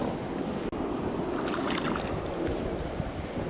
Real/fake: real